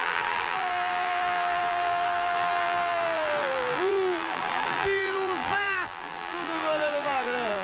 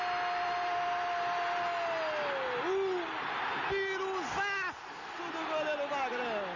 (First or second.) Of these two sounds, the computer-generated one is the first